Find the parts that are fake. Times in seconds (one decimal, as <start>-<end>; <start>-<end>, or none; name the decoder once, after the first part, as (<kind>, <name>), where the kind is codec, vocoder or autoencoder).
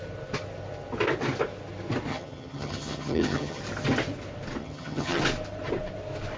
2.1-3.6 (vocoder, HiFi-GAN); 4.6-5.2